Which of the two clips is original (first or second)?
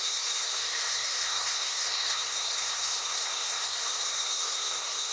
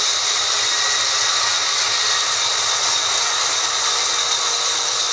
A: second